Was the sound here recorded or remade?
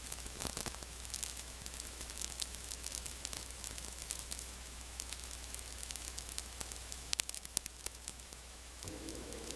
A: remade